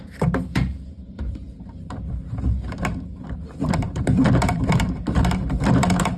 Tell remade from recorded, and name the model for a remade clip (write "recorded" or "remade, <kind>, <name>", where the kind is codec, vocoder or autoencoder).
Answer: remade, vocoder, BigVGAN v2